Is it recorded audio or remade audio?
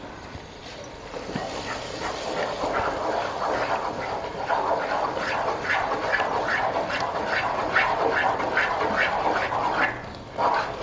recorded